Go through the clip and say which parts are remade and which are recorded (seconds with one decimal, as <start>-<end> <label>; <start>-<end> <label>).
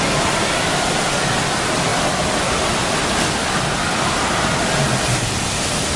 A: 0.0-6.0 recorded